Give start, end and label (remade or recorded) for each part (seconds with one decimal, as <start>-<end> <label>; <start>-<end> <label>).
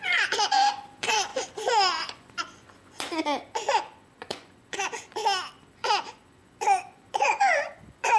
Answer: 0.0-5.2 remade; 5.2-5.7 recorded; 5.7-8.2 remade